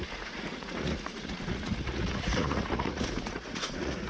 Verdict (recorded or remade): remade